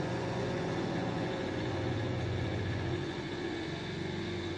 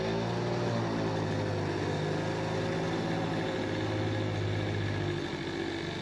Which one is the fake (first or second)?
first